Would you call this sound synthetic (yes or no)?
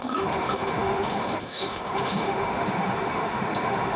yes